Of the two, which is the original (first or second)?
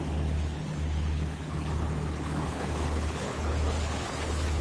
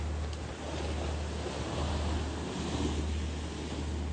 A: second